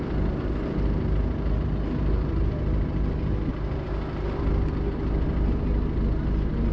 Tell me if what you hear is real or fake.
real